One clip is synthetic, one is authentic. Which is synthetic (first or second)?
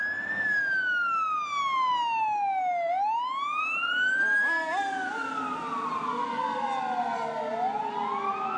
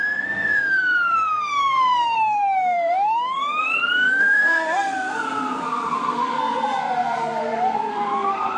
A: second